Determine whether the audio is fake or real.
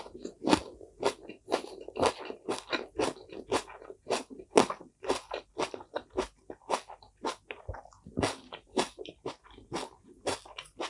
real